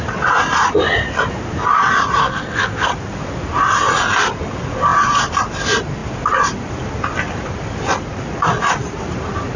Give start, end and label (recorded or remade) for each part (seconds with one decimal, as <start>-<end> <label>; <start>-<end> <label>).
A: 0.0-2.2 recorded; 2.2-2.9 remade; 2.9-9.6 recorded